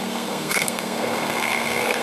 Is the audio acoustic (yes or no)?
no